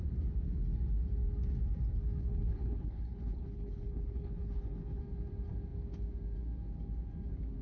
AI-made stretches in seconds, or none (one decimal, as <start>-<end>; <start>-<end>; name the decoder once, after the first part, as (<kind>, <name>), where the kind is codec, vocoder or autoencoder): 2.2-5.0 (codec, HILCodec)